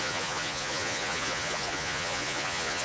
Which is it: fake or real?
fake